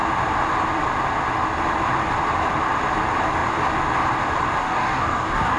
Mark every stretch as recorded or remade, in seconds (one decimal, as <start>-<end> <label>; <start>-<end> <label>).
0.0-4.6 recorded; 4.6-5.6 remade